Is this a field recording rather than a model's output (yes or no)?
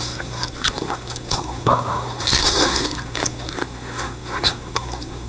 no